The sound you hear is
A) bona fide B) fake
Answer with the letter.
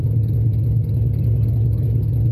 A